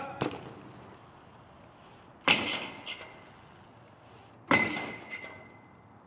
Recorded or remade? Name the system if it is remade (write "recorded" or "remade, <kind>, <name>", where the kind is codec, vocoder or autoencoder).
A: recorded